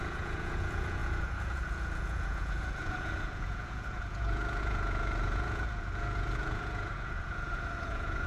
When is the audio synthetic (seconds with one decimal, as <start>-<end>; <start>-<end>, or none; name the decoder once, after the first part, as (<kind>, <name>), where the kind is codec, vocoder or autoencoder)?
0.0-8.3 (vocoder, Vocos)